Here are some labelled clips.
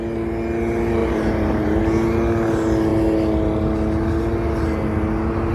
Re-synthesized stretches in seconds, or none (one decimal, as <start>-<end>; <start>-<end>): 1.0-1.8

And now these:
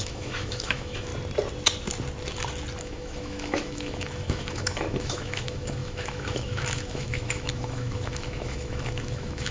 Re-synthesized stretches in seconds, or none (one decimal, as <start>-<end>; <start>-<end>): 0.0-1.1; 2.8-9.5

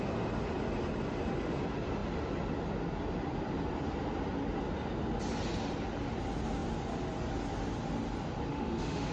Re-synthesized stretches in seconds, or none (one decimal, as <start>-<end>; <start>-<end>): 8.5-9.1

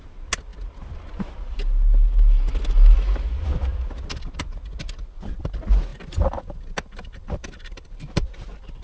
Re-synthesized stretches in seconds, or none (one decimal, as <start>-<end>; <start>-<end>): none

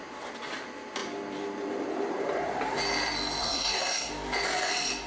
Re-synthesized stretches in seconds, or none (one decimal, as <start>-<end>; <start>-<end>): 3.4-4.1